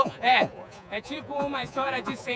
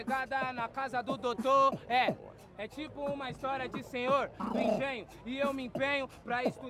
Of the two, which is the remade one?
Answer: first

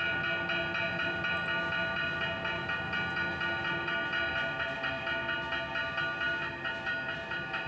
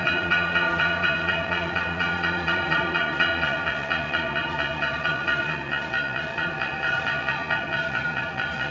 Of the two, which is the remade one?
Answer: second